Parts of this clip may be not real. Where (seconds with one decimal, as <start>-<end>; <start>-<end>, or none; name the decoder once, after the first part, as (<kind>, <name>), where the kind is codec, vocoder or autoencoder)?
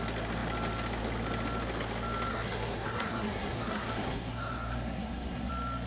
2.3-5.5 (codec, SNAC)